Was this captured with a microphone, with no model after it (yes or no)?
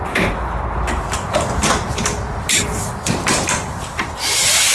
no